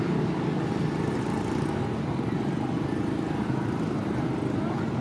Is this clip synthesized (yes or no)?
no